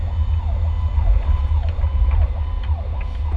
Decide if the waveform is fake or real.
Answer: real